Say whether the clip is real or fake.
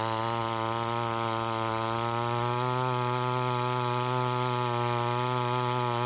real